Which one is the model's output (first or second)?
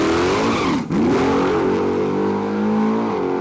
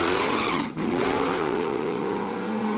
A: second